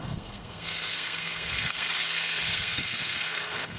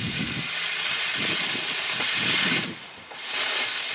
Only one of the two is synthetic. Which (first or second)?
first